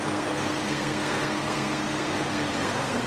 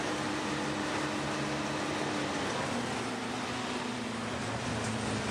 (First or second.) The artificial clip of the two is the first